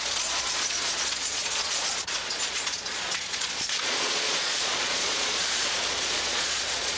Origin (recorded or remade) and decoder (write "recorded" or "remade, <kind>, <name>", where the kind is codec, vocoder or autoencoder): remade, vocoder, Vocos